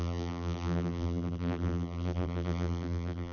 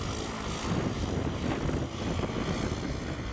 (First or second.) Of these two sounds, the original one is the second